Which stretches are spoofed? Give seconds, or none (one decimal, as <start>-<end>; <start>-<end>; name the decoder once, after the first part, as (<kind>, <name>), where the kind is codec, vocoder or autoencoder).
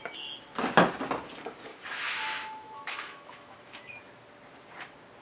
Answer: 1.7-4.0 (autoencoder, DAC-VAE)